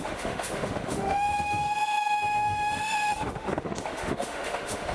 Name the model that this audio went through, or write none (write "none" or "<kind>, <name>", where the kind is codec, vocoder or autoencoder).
autoencoder, DAC-VAE